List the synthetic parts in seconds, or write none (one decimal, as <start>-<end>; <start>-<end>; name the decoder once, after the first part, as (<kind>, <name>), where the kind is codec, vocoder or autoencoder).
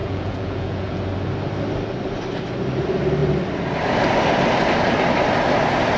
0.0-1.0 (vocoder, Vocos)